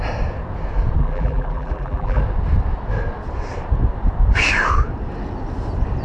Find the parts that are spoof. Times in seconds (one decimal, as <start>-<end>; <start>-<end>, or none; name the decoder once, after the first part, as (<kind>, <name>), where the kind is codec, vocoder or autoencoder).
1.0-2.2 (vocoder, BigVGAN v2)